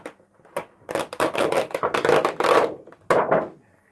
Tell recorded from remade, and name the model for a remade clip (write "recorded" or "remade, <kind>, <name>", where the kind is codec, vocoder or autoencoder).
recorded